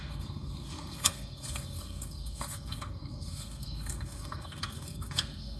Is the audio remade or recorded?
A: remade